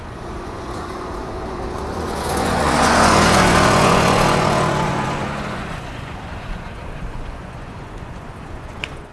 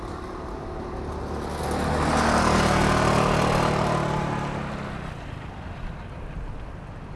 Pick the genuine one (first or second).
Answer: second